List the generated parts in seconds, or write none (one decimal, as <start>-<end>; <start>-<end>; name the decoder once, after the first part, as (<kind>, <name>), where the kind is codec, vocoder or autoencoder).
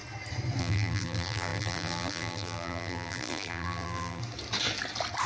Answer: 0.6-4.2 (vocoder, BigVGAN v2)